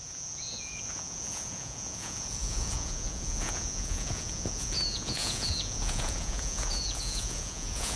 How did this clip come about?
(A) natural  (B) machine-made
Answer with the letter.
B